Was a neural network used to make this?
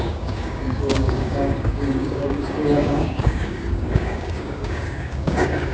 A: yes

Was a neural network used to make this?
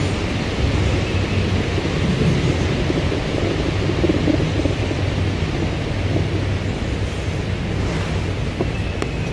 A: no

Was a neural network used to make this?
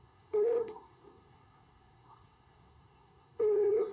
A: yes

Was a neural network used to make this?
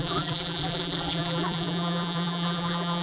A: yes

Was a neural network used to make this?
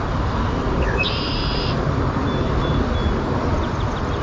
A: no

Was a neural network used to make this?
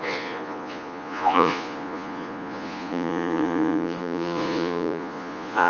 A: yes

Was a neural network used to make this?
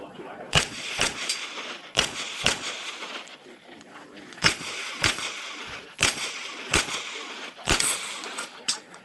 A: yes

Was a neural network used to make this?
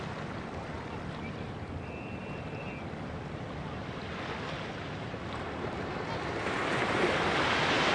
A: no